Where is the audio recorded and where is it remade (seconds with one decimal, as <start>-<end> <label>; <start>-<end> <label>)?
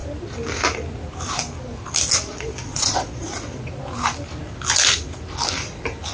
0.0-2.3 recorded; 2.3-3.3 remade; 3.3-6.1 recorded